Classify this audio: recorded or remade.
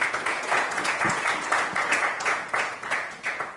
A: remade